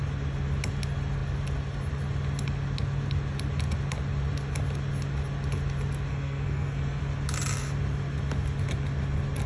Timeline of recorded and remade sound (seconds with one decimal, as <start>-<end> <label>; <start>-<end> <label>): 0.0-6.1 recorded; 6.1-7.0 remade; 7.0-9.5 recorded